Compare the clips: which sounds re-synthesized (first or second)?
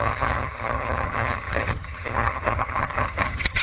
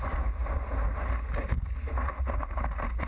first